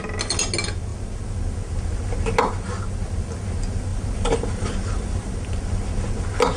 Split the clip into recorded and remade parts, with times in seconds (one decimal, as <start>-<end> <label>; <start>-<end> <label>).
0.0-3.9 recorded; 3.9-5.6 remade; 5.6-6.6 recorded